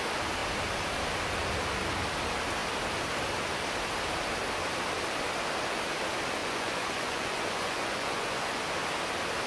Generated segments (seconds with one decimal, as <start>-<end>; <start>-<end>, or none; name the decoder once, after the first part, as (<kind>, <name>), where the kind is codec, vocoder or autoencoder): 6.4-8.6 (vocoder, Vocos)